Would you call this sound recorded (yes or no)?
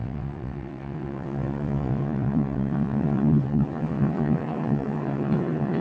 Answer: no